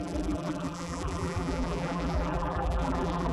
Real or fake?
fake